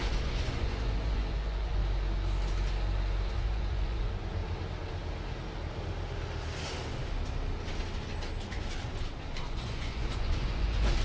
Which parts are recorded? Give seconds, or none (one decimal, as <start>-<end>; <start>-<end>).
1.8-3.3; 4.4-9.4